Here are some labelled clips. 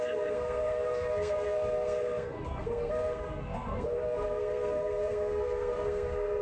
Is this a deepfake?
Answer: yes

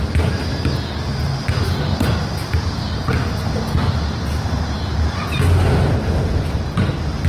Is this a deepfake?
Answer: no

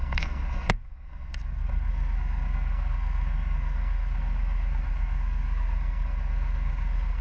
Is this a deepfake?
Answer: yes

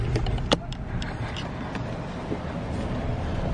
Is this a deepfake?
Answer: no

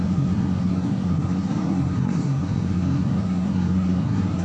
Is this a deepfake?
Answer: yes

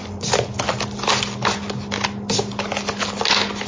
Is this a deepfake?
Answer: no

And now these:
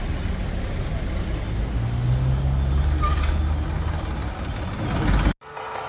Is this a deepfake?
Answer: no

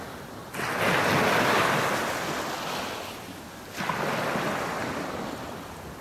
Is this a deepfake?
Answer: no